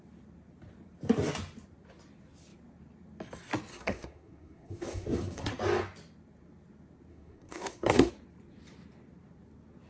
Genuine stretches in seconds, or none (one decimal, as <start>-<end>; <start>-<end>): 0.0-3.7; 5.5-7.1; 8.1-9.9